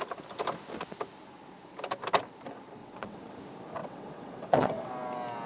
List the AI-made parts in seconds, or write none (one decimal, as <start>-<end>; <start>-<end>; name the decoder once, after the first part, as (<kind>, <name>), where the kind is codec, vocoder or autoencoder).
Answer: 2.8-3.3 (vocoder, WaveNeXt); 3.8-4.9